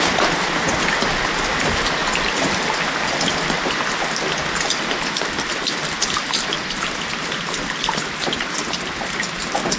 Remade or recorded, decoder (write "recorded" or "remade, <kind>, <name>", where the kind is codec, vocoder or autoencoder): recorded